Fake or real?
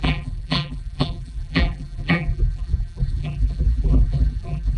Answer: fake